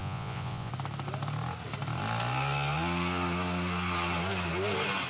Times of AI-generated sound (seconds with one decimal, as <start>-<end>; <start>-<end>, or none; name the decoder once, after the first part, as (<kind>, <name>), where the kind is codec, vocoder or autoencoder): 0.0-0.7 (vocoder, Vocos)